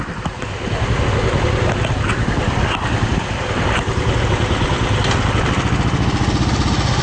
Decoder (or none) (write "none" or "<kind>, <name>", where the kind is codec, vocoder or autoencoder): none